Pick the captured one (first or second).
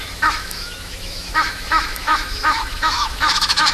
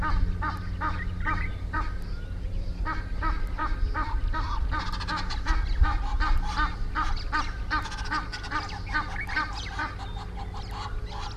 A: second